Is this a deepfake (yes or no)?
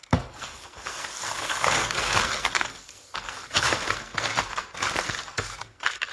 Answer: yes